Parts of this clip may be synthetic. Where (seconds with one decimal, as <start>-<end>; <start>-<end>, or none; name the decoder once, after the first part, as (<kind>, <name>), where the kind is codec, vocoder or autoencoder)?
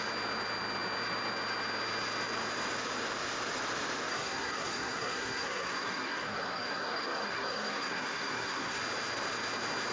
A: 4.1-8.8 (codec, SNAC)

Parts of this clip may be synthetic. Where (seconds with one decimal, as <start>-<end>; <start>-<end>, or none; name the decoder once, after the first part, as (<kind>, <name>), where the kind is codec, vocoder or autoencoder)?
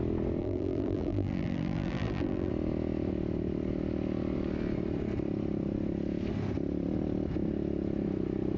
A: 0.4-2.5 (vocoder, BigVGAN v2)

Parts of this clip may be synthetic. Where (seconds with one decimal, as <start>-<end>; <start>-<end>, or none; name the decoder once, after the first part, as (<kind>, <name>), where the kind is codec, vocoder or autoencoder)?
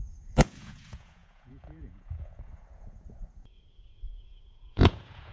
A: 0.0-5.3 (vocoder, Vocos)